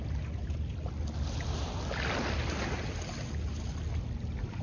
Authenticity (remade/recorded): recorded